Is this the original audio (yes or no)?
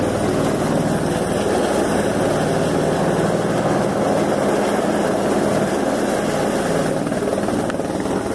yes